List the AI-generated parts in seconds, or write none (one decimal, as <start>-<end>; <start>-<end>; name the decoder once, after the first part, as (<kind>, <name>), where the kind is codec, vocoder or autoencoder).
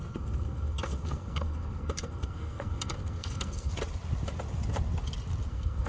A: 0.0-3.7 (codec, SNAC); 5.5-5.9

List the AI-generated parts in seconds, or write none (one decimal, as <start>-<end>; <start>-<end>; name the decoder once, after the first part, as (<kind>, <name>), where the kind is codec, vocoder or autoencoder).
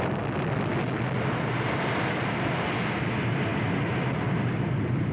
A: none